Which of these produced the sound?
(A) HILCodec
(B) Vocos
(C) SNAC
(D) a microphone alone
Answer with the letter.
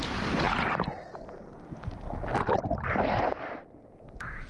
D